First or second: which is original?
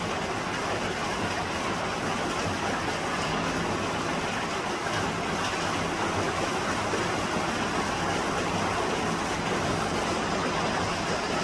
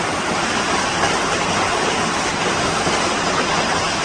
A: first